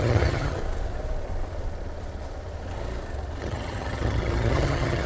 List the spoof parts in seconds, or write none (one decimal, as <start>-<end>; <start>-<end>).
0.0-0.6; 3.4-5.1